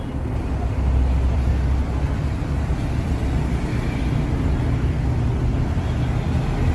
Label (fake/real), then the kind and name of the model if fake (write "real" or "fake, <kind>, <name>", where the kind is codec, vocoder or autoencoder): real